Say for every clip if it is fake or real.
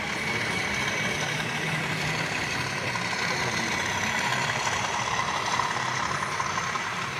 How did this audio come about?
fake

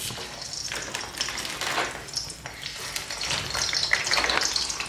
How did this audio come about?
real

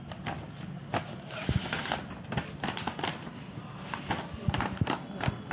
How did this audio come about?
real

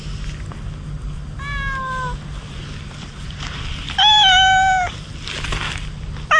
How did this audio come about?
real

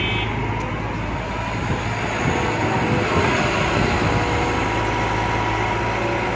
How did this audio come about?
real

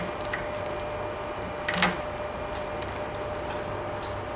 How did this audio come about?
real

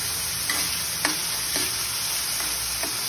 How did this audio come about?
real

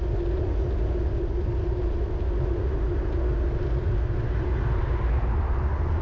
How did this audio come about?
real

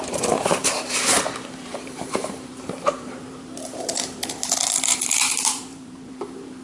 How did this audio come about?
fake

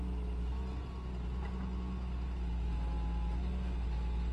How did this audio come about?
real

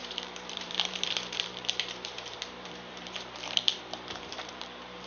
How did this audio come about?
fake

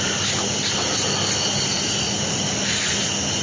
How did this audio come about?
real